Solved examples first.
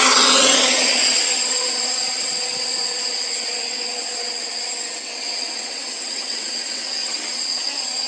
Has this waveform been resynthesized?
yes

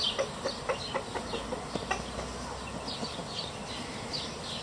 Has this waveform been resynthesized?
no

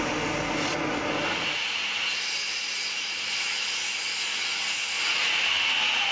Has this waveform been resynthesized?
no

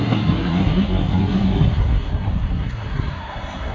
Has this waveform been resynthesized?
yes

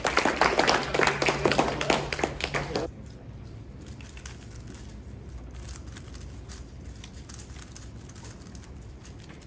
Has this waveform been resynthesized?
no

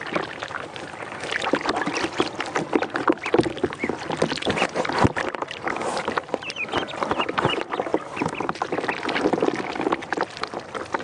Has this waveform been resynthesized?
no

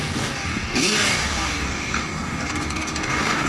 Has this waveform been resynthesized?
yes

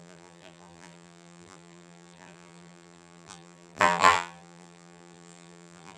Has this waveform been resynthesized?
yes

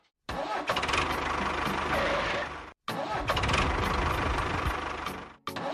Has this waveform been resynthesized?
no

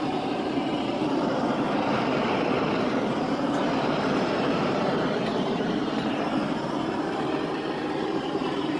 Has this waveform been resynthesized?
yes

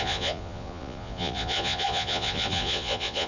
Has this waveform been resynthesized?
yes